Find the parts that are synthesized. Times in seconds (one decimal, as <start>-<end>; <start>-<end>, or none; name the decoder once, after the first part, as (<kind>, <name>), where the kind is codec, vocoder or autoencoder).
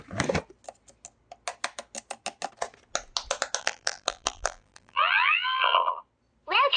3.6-6.0 (vocoder, BigVGAN v2)